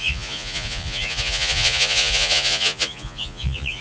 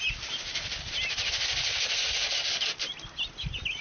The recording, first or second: second